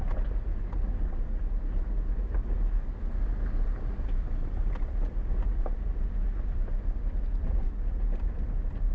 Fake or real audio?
real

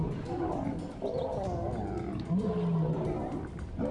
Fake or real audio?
real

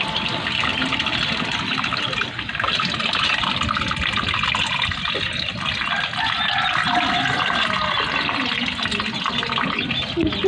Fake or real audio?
real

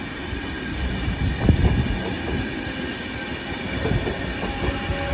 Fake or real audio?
real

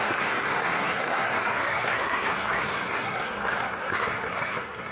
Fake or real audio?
fake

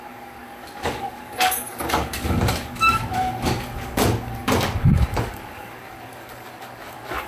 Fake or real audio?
fake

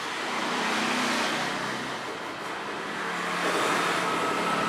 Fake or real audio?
real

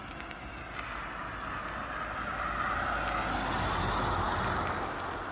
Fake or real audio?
real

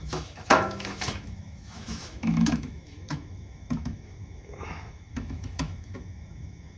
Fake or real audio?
fake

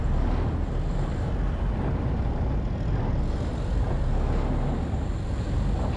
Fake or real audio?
real